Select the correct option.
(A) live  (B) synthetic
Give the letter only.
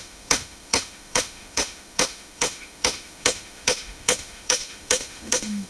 B